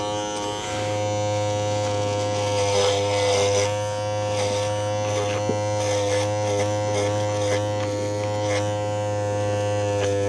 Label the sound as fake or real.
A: real